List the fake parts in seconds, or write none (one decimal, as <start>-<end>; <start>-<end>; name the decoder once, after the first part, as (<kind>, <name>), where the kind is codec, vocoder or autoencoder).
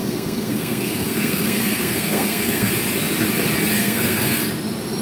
0.0-2.7 (codec, SNAC); 3.8-4.4